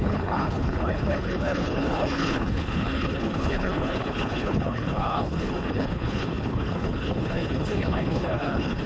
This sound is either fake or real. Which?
fake